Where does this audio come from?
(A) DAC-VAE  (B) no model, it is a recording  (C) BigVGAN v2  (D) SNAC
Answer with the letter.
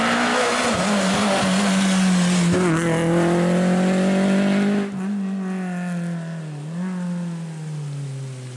B